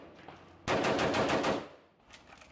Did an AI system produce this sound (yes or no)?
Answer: no